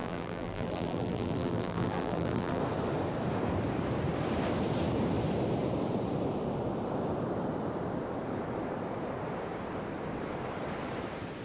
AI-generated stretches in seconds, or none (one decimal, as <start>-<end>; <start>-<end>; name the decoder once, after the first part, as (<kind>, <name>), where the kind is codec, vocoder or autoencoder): 0.0-2.6 (vocoder, BigVGAN v2)